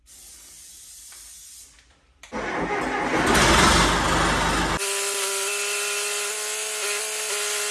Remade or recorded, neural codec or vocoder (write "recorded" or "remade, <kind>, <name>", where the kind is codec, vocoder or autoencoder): recorded